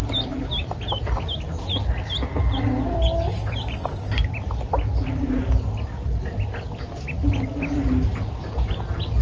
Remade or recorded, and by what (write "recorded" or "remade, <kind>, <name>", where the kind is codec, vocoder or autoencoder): recorded